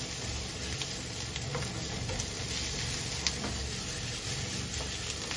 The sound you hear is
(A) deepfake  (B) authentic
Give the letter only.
B